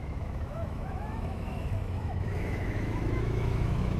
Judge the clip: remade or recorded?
remade